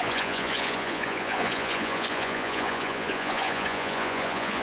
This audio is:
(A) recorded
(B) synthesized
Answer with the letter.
B